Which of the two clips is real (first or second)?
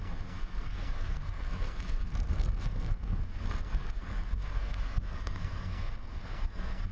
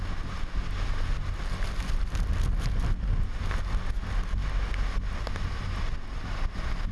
second